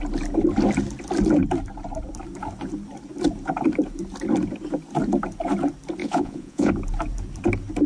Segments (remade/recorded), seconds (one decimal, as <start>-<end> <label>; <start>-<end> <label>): 0.0-6.0 recorded; 6.0-6.7 remade; 6.7-7.9 recorded